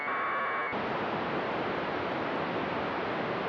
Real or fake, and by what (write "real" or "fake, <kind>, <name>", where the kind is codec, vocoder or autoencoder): real